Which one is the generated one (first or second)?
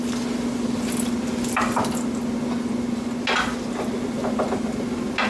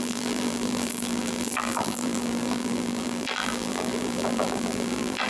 second